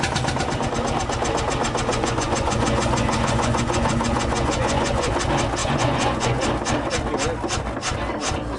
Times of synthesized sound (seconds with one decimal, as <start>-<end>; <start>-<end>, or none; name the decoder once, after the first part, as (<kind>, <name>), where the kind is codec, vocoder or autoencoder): 1.9-5.1 (vocoder, Vocos); 5.6-6.4